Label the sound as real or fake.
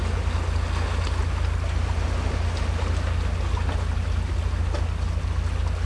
real